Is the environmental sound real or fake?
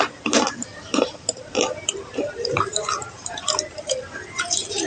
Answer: fake